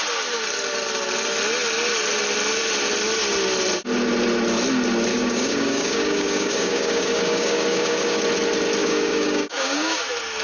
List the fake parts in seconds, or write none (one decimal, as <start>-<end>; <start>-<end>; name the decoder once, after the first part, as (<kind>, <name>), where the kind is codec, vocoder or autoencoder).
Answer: 5.1-8.2 (codec, DAC); 8.8-10.0